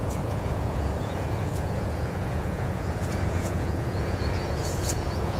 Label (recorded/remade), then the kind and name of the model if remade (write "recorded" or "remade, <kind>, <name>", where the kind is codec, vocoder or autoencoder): remade, vocoder, Vocos